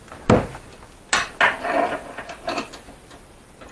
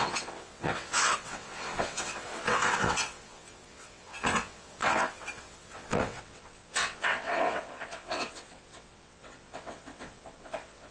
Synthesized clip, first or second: second